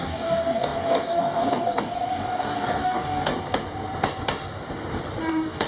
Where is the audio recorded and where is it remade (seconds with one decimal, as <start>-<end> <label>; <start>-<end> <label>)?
0.0-3.3 remade; 3.3-5.3 recorded; 5.3-5.7 remade